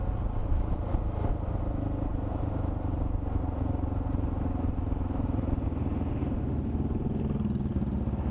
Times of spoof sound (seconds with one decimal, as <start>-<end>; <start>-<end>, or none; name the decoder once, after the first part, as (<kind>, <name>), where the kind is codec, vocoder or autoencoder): 0.4-1.3 (vocoder, BigVGAN v2); 2.1-5.5